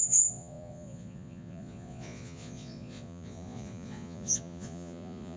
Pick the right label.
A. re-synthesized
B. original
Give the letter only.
A